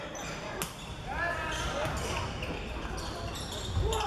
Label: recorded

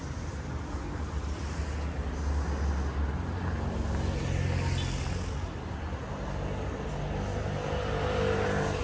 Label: recorded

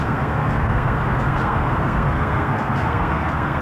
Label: remade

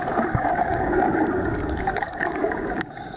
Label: remade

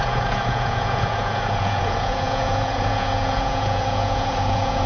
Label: remade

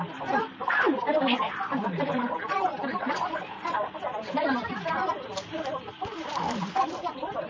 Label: recorded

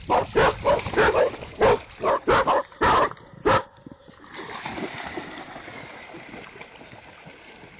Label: recorded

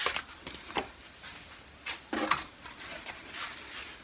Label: recorded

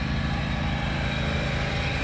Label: recorded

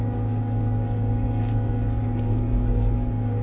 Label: remade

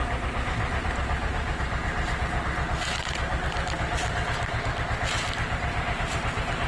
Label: recorded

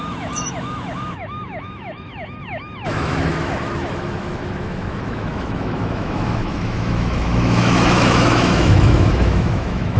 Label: remade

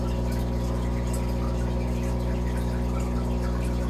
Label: recorded